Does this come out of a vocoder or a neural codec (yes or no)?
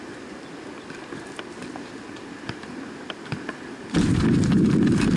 no